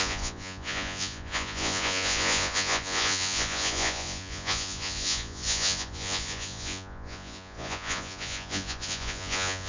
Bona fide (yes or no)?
no